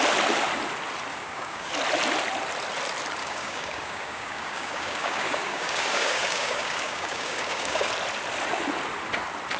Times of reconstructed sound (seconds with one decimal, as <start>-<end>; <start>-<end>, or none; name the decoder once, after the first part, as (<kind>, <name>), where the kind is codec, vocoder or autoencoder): 1.1-1.7 (codec, DAC); 3.2-7.9